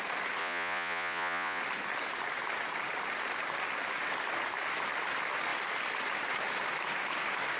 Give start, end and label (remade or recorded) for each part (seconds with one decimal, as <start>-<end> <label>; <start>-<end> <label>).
0.0-0.4 recorded; 0.4-1.6 remade; 1.6-7.6 recorded